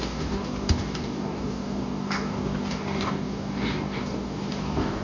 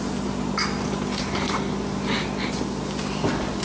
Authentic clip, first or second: second